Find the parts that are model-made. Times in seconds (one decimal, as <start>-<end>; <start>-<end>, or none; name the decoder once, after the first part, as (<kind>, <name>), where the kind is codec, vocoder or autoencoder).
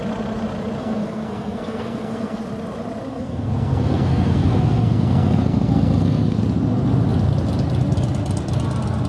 0.8-2.4 (codec, SNAC); 3.1-6.4